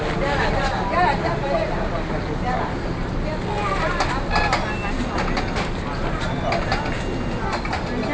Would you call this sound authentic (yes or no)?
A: yes